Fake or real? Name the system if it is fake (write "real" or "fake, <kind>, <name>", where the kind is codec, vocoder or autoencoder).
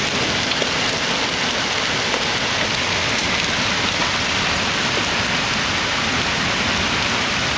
real